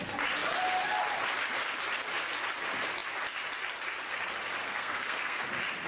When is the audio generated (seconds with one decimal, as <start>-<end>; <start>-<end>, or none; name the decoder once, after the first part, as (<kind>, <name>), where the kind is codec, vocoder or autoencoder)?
4.6-5.4 (codec, SNAC)